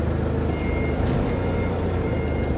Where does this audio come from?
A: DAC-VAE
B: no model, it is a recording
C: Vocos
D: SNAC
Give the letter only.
B